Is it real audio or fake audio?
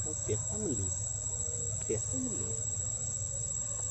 real